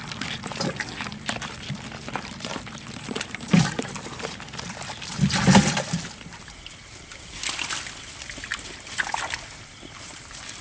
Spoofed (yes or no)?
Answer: no